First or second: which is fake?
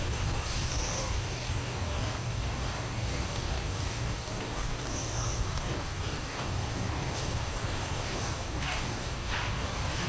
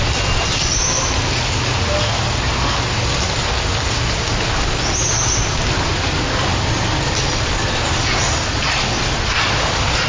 first